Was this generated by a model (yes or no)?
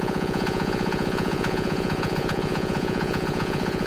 yes